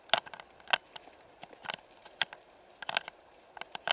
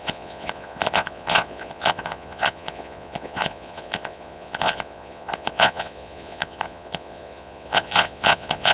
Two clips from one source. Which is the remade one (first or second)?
second